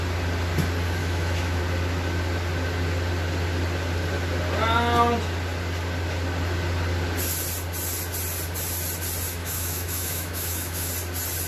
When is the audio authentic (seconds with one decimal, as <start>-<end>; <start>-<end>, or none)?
0.0-1.0; 1.6-9.4; 10.9-11.5